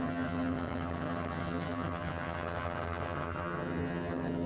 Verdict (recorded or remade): remade